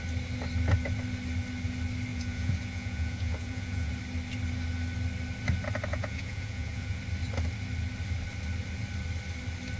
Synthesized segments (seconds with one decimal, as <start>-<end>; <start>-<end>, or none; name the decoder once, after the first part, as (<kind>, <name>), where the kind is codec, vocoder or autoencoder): 2.1-3.9 (vocoder, Vocos); 5.9-7.0